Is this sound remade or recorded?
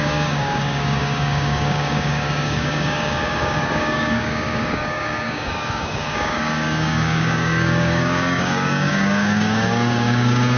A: remade